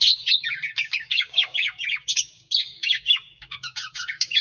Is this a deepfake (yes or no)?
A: yes